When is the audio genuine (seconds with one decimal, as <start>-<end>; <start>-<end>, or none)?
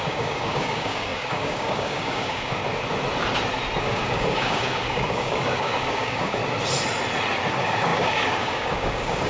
2.6-3.8; 6.4-7.5